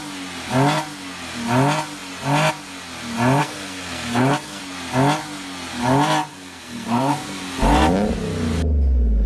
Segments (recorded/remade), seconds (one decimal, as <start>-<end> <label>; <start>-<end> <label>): 0.0-3.4 recorded; 3.4-4.6 remade; 4.6-6.3 recorded; 6.3-7.4 remade; 7.4-9.3 recorded